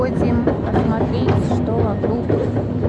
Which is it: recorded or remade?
recorded